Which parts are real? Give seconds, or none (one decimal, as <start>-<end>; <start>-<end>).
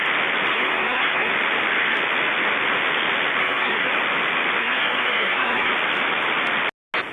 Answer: 0.0-0.5; 1.3-3.4; 3.9-4.6; 5.7-7.1